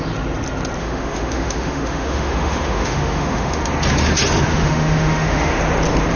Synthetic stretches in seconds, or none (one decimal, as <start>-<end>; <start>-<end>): 0.8-3.7; 4.5-5.6